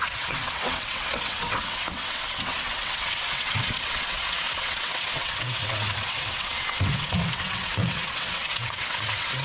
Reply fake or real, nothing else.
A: fake